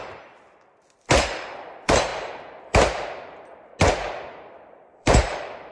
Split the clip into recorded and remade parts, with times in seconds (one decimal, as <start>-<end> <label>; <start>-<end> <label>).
0.0-2.1 remade; 2.1-2.6 recorded; 2.6-3.7 remade; 3.7-4.5 recorded; 4.5-5.7 remade

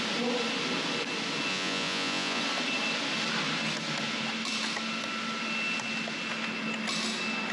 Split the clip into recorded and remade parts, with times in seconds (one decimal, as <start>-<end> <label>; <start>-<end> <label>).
0.0-1.5 recorded; 1.5-2.4 remade; 2.4-7.5 recorded